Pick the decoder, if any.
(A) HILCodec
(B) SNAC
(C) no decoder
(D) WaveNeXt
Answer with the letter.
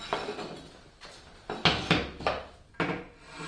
C